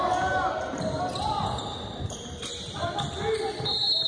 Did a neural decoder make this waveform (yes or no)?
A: no